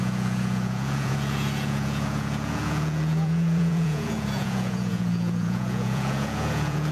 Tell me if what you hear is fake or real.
fake